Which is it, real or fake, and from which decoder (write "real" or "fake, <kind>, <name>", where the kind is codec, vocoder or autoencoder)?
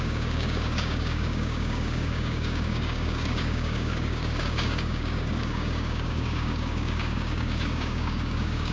fake, codec, DAC